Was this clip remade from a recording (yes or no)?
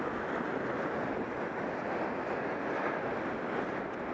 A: no